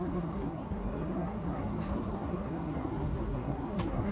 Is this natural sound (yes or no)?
no